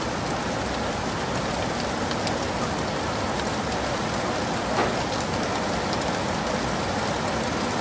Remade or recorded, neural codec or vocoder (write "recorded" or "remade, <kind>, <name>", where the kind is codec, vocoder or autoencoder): recorded